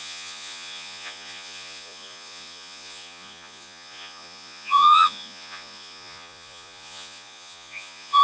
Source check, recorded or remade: remade